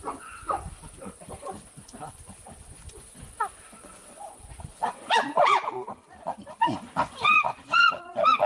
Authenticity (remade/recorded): remade